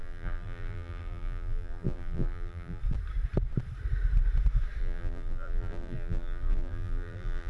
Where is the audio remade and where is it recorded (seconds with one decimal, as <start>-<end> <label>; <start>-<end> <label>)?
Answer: 0.0-2.8 remade; 2.8-4.8 recorded; 4.8-7.5 remade

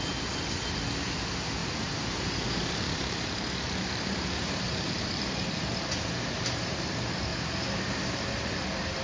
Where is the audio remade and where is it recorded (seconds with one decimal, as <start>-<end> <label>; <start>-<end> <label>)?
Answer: 0.0-1.6 recorded; 1.6-6.8 remade; 6.8-7.3 recorded; 7.3-7.8 remade; 7.8-9.0 recorded

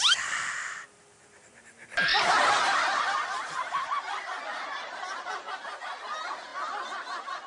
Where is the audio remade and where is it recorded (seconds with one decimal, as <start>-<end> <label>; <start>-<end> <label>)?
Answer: 0.0-2.1 recorded; 2.1-3.0 remade; 3.0-7.5 recorded

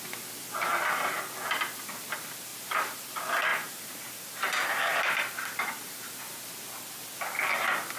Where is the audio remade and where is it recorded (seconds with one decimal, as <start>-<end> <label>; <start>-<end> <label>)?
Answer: 0.0-0.7 recorded; 0.7-1.2 remade; 1.2-2.5 recorded; 2.5-3.1 remade; 3.1-3.5 recorded; 3.5-6.2 remade; 6.2-8.0 recorded

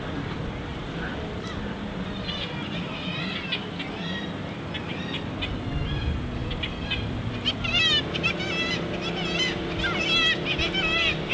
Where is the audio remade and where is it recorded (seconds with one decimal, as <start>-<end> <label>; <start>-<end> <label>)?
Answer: 0.0-0.7 recorded; 0.7-2.1 remade; 2.1-6.4 recorded; 6.4-7.8 remade; 7.8-11.3 recorded

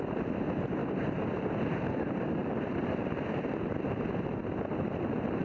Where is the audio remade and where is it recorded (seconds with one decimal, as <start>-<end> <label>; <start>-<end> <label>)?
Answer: 0.0-0.8 recorded; 0.8-4.0 remade; 4.0-5.4 recorded